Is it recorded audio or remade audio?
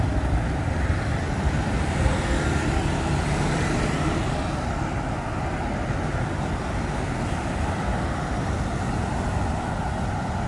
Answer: recorded